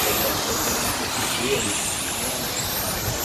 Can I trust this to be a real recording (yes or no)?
yes